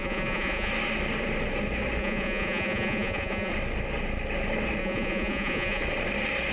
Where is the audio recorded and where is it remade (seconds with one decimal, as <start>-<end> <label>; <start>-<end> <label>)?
0.0-0.7 remade; 0.7-2.0 recorded; 2.0-3.5 remade; 3.5-4.8 recorded; 4.8-5.8 remade; 5.8-6.5 recorded